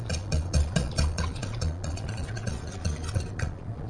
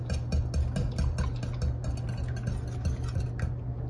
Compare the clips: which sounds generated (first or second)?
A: first